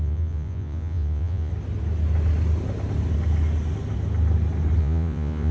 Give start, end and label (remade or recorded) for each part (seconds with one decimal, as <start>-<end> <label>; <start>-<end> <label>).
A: 0.0-1.5 remade; 1.5-4.8 recorded; 4.8-5.5 remade